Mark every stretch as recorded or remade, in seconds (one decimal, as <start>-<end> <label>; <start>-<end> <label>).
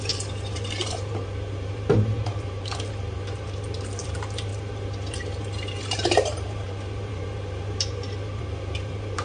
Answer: 0.0-9.2 remade